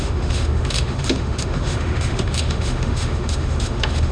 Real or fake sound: fake